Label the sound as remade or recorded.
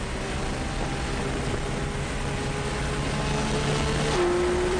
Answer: recorded